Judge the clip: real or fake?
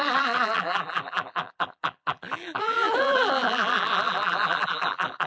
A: fake